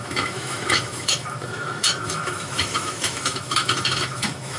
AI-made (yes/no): yes